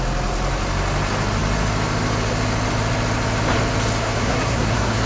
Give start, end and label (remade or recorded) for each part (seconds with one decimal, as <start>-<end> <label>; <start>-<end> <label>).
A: 0.0-4.0 recorded; 4.0-5.1 remade